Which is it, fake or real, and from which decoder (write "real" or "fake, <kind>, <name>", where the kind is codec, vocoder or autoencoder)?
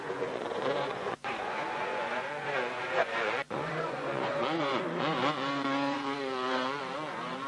fake, vocoder, Vocos